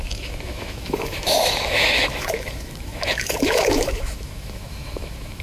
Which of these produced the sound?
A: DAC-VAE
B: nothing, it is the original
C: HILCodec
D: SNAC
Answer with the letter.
A